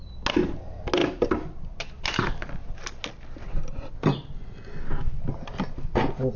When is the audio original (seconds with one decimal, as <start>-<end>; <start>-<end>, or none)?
0.0-1.0; 2.6-6.4